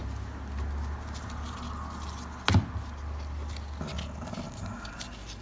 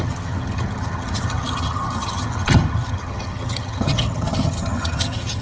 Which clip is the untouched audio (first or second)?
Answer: first